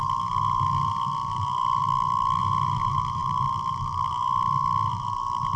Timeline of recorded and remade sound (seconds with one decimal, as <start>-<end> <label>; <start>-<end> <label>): 0.0-1.8 recorded; 1.8-2.4 remade; 2.4-5.6 recorded